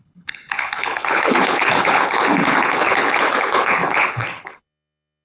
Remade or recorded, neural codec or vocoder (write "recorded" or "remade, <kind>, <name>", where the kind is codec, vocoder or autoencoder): remade, codec, HILCodec